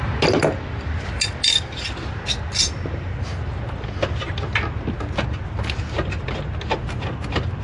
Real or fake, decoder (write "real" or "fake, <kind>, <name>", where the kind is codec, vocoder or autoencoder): real